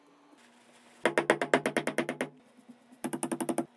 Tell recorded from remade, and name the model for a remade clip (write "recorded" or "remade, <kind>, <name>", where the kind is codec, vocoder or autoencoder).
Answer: recorded